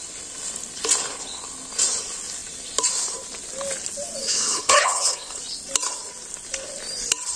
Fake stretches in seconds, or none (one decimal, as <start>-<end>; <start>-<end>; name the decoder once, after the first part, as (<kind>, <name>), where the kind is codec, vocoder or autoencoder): 4.2-5.4 (codec, HILCodec)